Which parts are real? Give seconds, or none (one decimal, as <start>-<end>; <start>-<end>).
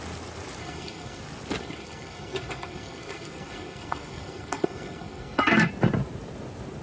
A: 0.0-0.6; 1.2-1.6; 5.7-6.8